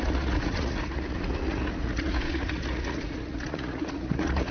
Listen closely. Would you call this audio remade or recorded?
remade